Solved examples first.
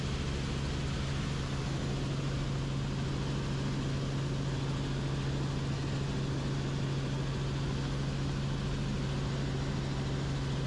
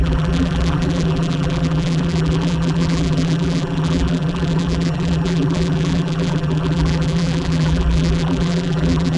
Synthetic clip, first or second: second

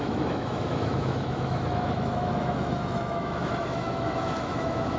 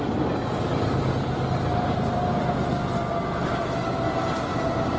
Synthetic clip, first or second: first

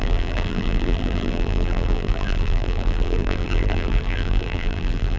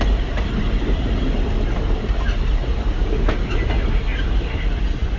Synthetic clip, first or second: first